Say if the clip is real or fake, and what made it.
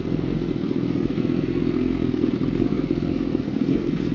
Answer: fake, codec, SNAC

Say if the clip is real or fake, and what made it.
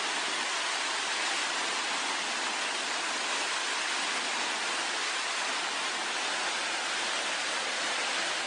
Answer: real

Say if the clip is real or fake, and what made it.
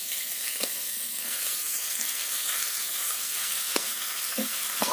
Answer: fake, codec, SNAC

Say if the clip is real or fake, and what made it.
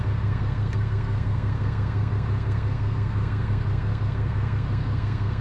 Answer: fake, codec, SNAC